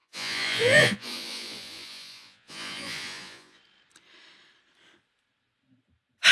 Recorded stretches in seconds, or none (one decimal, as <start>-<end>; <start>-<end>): 3.6-6.3